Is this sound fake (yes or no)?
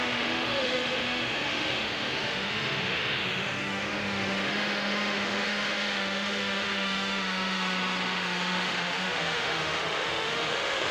yes